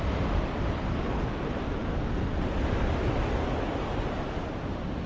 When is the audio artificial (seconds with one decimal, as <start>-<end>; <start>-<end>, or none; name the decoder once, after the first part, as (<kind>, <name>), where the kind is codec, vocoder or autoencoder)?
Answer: none